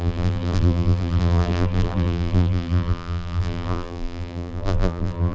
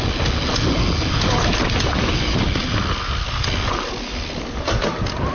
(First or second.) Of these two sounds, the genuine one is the second